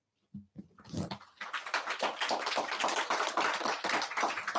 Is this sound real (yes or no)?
yes